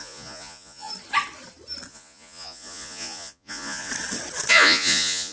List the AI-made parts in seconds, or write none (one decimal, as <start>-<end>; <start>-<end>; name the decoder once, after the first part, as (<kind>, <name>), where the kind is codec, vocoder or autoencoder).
0.0-0.9 (vocoder, Vocos); 1.9-3.9; 4.5-5.3